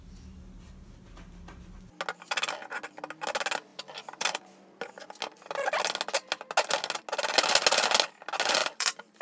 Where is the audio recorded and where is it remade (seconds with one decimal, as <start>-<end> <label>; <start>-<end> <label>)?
0.0-3.7 recorded; 3.7-4.4 remade; 4.4-8.6 recorded; 8.6-9.2 remade